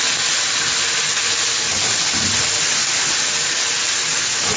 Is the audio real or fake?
real